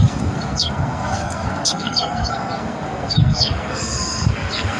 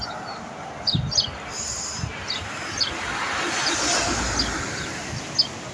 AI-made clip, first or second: first